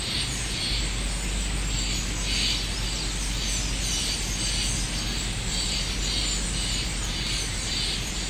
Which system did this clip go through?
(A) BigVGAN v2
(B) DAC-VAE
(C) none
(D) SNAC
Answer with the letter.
C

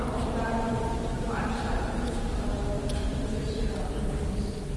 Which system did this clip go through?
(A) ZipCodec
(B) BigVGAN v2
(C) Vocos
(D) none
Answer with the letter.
B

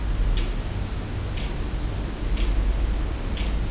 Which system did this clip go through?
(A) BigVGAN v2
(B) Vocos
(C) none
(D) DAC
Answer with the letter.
C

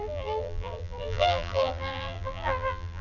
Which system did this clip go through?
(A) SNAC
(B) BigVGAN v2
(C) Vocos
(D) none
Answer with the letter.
B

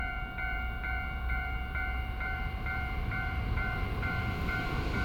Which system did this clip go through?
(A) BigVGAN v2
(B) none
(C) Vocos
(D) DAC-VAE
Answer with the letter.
A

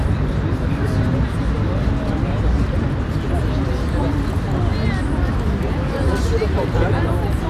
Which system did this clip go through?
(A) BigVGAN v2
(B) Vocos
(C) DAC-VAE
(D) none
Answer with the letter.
D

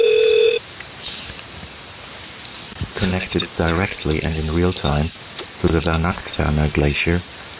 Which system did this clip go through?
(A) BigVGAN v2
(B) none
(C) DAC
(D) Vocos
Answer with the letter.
A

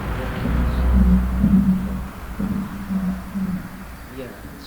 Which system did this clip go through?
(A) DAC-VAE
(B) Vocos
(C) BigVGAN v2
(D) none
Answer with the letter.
D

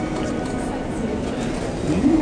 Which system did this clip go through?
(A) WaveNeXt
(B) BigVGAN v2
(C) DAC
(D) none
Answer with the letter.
D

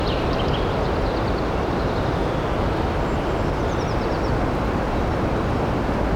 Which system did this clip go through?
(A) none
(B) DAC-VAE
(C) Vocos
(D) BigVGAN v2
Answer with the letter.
A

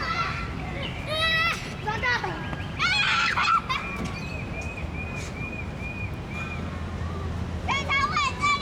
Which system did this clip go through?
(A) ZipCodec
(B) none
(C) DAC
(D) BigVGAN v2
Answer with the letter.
B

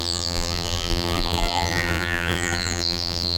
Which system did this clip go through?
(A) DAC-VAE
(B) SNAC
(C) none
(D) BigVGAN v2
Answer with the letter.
D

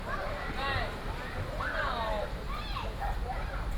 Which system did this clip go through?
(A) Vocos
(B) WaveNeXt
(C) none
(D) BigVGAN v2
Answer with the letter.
C